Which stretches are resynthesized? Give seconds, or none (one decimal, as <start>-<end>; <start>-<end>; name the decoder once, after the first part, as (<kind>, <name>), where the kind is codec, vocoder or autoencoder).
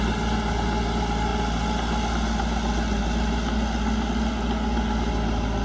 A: none